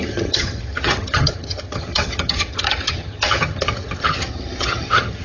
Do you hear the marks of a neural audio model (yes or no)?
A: yes